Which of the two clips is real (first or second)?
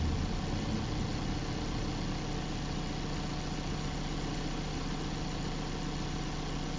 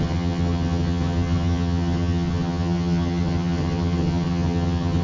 first